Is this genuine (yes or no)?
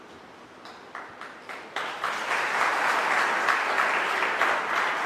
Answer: yes